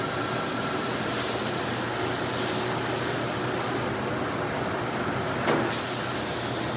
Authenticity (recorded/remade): recorded